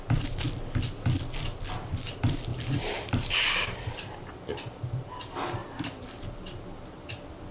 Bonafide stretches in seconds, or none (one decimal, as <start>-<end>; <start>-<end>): 0.0-2.5; 4.3-7.5